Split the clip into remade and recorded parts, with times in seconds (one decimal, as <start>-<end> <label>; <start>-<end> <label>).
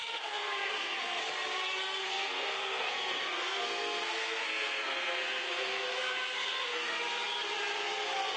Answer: 0.0-1.2 remade; 1.2-2.0 recorded; 2.0-6.9 remade; 6.9-8.4 recorded